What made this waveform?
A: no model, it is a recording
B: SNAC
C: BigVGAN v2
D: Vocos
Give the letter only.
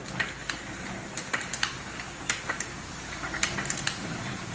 C